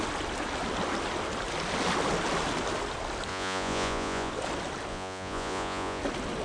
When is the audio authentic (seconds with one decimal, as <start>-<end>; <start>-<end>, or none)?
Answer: 0.0-3.3; 4.3-4.9; 6.0-6.4